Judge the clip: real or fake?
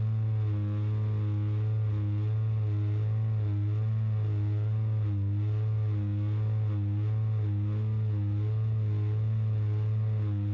real